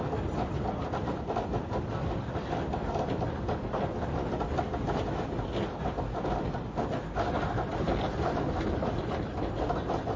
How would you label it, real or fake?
real